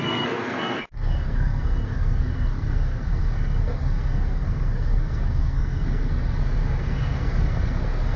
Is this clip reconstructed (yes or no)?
yes